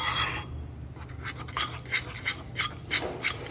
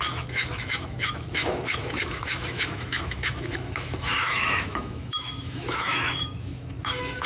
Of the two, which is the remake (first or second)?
second